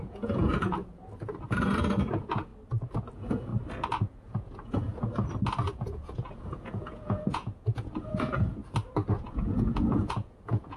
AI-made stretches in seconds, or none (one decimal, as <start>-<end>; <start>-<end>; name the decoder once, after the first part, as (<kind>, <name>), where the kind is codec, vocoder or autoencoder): 0.0-2.5 (vocoder, Vocos); 3.1-3.5; 4.0-4.9; 5.7-8.6; 9.1-10.8